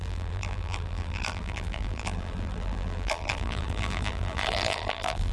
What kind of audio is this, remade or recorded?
remade